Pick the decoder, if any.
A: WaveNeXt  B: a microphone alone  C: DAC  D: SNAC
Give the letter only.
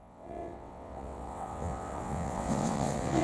A